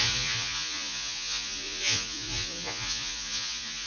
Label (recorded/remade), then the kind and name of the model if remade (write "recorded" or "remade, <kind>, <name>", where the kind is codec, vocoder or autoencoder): remade, vocoder, Vocos